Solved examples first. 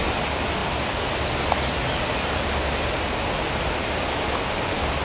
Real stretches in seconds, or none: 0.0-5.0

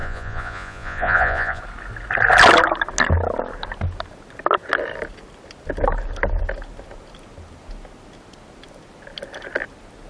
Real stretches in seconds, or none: 1.6-10.1

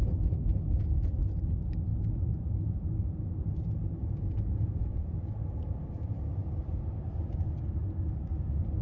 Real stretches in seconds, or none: 0.0-1.9; 3.2-4.0; 5.1-8.8

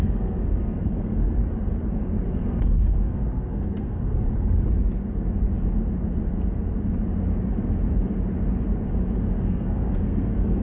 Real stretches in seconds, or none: 1.4-2.3; 4.1-9.4

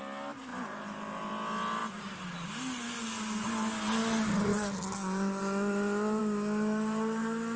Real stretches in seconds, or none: 0.0-7.6

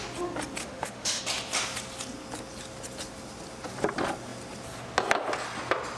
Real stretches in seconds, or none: 0.0-0.6; 1.2-6.0

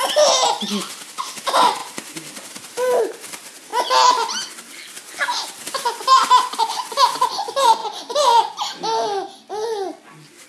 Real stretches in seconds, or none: 0.0-10.5

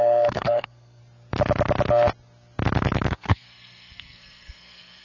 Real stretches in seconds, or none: 1.0-3.1